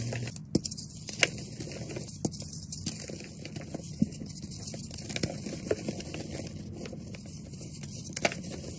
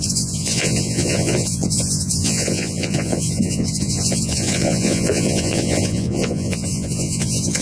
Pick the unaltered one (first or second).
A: first